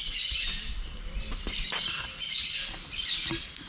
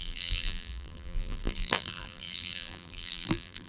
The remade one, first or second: second